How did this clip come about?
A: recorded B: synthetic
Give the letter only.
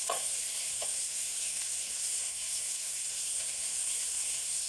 B